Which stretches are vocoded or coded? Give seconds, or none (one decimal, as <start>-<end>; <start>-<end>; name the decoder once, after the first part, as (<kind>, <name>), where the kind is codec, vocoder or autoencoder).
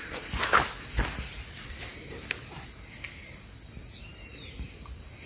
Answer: none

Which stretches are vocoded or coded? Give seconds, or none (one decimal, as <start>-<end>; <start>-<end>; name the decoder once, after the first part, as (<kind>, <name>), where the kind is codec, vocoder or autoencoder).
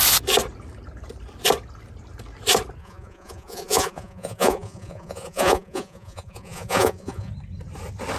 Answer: 2.8-7.3 (vocoder, Vocos)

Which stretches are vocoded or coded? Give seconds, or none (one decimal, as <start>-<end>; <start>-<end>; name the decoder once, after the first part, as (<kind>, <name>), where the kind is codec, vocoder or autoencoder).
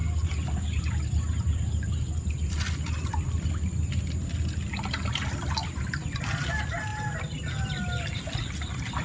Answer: none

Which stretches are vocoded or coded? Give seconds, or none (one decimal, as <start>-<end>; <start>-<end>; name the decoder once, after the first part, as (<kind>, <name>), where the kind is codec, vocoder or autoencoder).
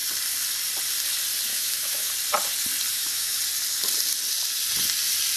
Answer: 1.5-2.1 (autoencoder, DAC-VAE); 2.9-3.4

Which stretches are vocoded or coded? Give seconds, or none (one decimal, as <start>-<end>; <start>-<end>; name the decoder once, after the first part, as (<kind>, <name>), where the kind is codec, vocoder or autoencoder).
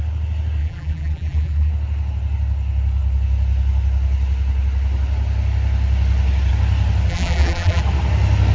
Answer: 0.6-1.7 (vocoder, BigVGAN v2); 7.1-7.8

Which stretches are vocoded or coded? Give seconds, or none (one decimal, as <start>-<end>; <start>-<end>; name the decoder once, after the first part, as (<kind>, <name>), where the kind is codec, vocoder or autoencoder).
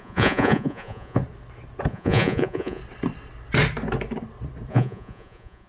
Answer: 0.0-1.2 (vocoder, Vocos); 1.9-2.8; 4.7-5.7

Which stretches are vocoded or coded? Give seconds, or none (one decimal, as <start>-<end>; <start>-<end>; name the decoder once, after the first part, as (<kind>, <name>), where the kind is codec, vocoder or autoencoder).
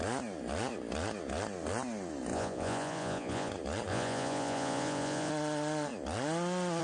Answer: 2.3-3.5 (vocoder, Vocos); 3.9-5.3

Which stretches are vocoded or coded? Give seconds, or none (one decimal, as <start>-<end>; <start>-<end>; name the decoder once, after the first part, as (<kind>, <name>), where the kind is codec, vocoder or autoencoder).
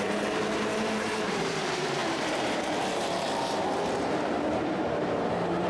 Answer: 0.0-5.7 (vocoder, BigVGAN v2)